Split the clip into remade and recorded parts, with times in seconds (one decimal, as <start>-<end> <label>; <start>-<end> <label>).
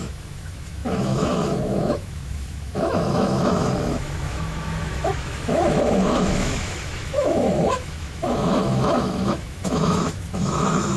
0.0-11.0 remade